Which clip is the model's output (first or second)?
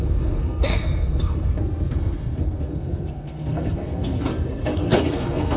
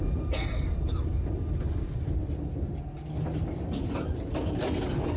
first